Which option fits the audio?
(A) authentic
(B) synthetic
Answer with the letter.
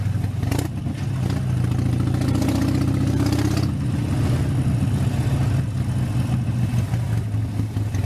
A